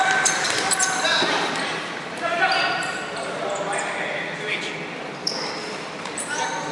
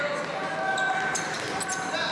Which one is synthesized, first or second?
first